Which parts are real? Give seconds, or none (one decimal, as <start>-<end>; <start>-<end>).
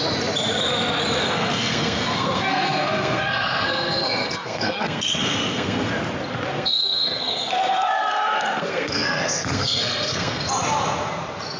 0.0-1.2; 5.9-6.5; 10.5-11.6